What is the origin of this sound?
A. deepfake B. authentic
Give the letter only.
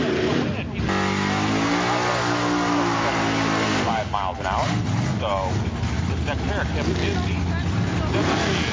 B